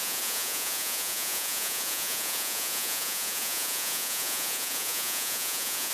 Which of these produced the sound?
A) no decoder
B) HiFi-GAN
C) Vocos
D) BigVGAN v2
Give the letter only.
C